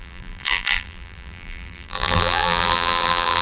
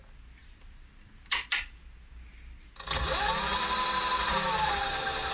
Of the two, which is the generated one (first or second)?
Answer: first